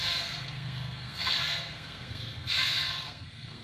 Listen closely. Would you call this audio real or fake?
fake